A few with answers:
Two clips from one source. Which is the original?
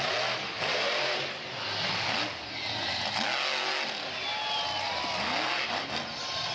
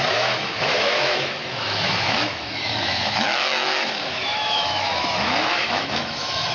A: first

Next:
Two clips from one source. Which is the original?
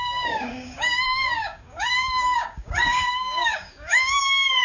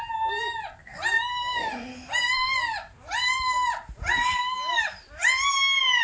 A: second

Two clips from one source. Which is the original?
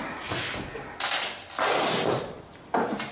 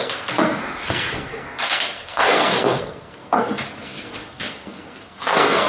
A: first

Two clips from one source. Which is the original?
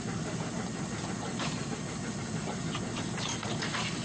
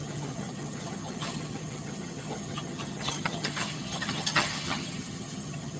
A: first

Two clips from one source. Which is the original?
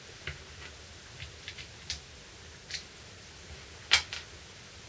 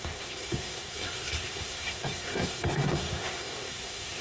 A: first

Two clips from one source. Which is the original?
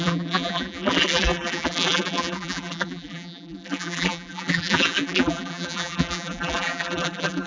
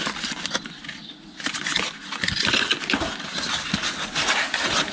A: second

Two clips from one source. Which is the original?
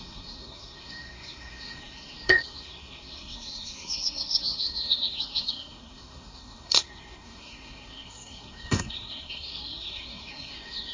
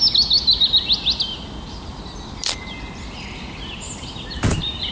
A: second